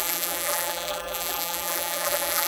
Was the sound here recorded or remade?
remade